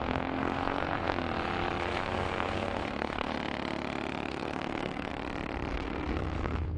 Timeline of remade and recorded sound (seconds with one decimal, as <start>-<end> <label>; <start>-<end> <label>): 0.0-1.2 remade; 1.2-1.8 recorded; 1.8-3.3 remade; 3.3-4.3 recorded; 4.3-5.1 remade; 5.1-5.7 recorded; 5.7-6.8 remade